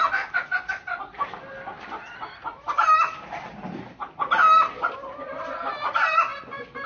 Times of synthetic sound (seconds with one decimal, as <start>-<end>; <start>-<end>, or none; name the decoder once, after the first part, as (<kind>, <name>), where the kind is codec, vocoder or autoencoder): none